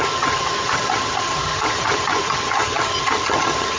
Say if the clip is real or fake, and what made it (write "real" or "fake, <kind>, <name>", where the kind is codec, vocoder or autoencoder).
fake, vocoder, HiFi-GAN